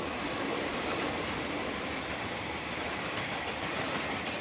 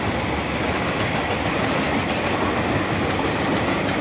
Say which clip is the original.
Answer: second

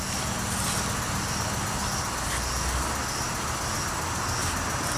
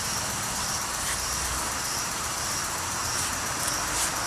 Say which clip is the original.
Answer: first